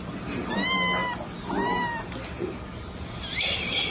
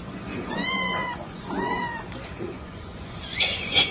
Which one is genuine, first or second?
first